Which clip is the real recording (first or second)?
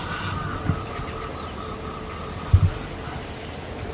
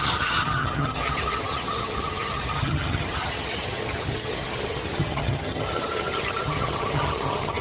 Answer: first